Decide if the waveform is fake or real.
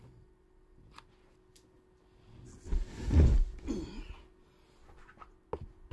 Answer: real